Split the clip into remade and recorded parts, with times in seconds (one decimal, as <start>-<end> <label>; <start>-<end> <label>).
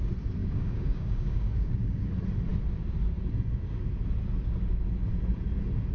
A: 0.0-0.4 recorded; 0.4-2.1 remade; 2.1-5.9 recorded